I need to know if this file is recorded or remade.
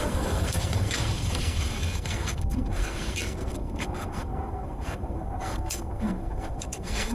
remade